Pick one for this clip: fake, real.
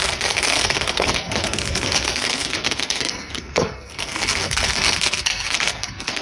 fake